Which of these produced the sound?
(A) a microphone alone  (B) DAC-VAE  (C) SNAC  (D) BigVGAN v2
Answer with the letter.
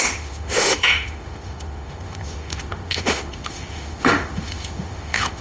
B